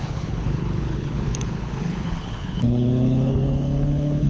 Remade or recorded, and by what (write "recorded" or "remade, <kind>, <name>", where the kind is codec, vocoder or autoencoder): remade, codec, HILCodec